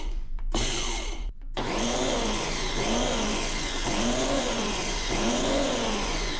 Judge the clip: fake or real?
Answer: fake